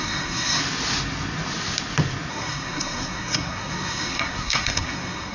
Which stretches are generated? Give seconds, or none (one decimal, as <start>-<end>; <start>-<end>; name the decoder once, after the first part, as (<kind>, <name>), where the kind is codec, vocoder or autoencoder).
0.0-0.6 (codec, SNAC); 2.3-5.3